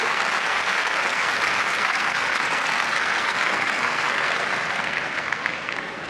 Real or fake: fake